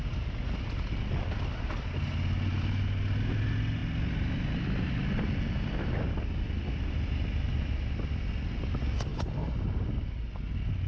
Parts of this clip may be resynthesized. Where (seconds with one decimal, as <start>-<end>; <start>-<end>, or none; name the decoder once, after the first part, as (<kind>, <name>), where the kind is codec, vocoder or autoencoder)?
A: none